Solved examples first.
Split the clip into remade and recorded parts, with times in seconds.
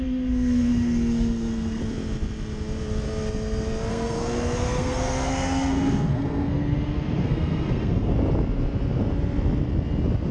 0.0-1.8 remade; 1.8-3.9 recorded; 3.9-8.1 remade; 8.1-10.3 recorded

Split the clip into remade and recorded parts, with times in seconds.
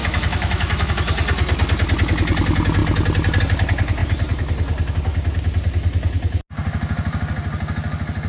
0.0-0.9 remade; 0.9-8.3 recorded